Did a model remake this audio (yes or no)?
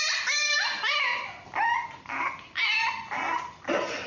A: no